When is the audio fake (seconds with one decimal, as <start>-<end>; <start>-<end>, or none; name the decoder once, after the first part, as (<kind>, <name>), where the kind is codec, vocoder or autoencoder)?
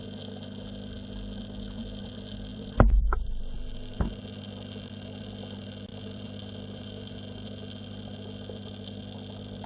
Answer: 2.5-3.4 (vocoder, BigVGAN v2); 5.9-7.1